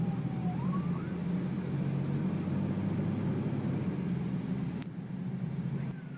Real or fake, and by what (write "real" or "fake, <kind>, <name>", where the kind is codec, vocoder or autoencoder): real